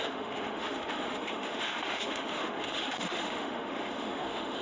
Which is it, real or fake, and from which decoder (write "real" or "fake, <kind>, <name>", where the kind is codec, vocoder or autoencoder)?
fake, autoencoder, DAC-VAE